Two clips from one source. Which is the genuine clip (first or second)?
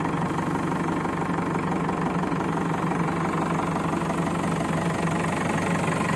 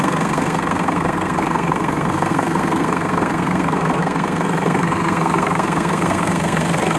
first